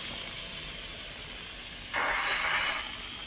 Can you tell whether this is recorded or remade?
recorded